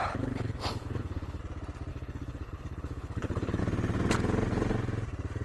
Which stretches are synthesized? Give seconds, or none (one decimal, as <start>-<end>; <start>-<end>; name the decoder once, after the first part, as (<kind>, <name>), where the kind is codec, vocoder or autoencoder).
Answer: 0.0-1.4 (codec, HILCodec); 1.9-3.6